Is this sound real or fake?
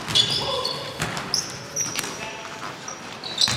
real